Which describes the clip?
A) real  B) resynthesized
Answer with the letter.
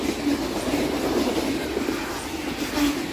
A